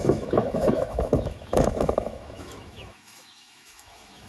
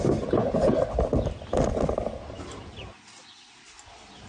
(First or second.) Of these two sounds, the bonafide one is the second